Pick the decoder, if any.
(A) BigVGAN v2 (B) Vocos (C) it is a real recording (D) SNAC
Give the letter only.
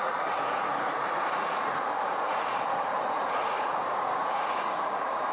B